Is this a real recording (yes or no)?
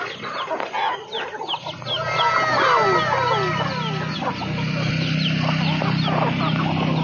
yes